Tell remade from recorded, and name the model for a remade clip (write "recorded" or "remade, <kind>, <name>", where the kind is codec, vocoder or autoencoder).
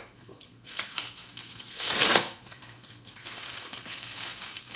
remade, codec, SNAC